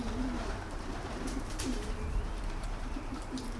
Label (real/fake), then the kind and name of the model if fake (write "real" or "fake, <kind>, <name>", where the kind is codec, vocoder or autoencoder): fake, vocoder, BigVGAN v2